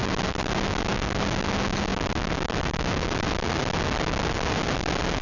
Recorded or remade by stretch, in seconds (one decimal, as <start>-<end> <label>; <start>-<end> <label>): 0.0-5.2 recorded